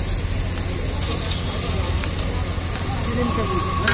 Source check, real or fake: real